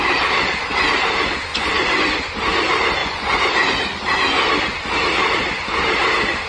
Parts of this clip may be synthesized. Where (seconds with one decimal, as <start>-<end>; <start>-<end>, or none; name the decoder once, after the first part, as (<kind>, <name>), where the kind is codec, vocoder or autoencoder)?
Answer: 1.5-2.0 (vocoder, Vocos); 3.0-3.7

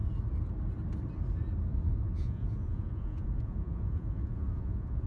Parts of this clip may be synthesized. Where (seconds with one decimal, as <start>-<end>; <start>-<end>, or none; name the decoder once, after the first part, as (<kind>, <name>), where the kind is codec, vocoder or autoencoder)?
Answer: 1.7-5.1 (vocoder, Vocos)

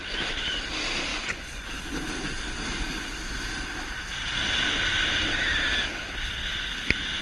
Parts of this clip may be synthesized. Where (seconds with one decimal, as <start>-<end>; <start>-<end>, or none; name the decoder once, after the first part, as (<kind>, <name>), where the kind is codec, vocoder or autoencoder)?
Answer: 1.1-1.8 (vocoder, Vocos)

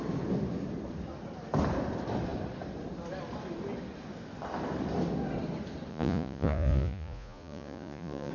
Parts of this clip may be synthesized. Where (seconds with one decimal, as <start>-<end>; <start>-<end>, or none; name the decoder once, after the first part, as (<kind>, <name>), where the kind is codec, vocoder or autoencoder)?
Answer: 5.9-8.3 (vocoder, Vocos)

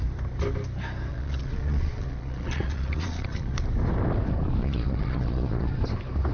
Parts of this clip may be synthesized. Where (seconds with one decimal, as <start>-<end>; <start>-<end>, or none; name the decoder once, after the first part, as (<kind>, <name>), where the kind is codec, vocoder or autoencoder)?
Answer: 1.1-3.6 (vocoder, Vocos); 4.6-5.7

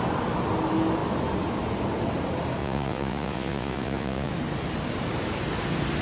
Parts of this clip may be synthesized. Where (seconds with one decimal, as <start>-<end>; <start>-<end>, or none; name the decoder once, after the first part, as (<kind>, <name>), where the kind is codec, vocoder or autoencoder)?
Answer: 2.6-4.3 (vocoder, Vocos)

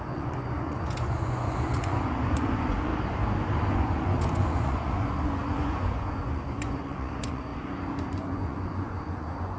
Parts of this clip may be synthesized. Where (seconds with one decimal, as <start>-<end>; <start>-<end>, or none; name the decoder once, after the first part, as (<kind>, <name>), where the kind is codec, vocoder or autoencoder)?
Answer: 0.0-2.9 (vocoder, Vocos); 3.7-7.5; 8.2-9.6

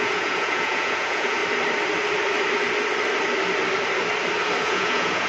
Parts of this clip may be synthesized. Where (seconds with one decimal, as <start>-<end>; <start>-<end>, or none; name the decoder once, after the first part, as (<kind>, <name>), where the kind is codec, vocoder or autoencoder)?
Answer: 0.0-1.4 (vocoder, Vocos); 4.6-5.3